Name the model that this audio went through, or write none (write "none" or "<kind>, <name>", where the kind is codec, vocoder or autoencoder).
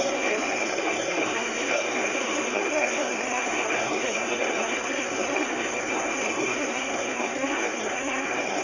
codec, SNAC